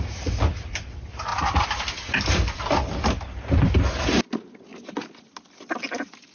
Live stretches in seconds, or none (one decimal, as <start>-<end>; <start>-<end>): 0.0-1.3; 2.6-4.7; 5.2-6.3